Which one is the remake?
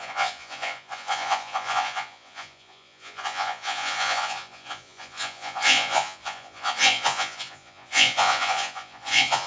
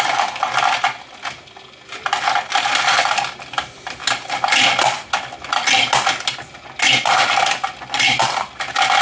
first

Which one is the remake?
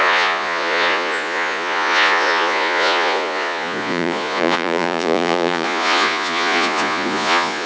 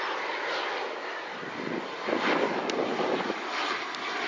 first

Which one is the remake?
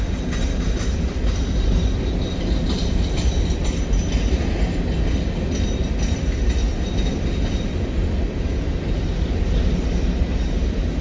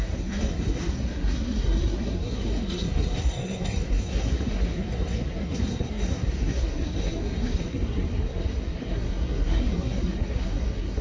second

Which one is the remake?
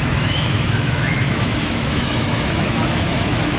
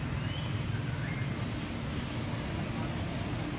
first